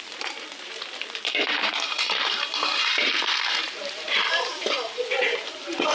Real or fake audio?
fake